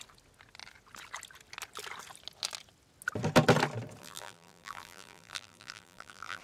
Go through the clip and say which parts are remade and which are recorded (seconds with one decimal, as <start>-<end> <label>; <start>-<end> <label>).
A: 0.0-4.0 recorded; 4.0-6.4 remade